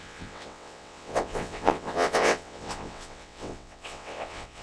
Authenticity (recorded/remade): remade